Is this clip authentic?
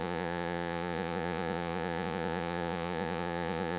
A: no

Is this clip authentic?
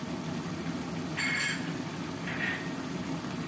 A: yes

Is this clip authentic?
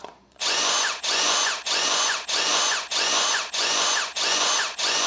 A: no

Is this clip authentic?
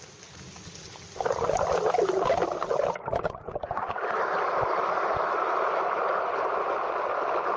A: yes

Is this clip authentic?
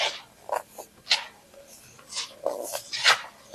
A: yes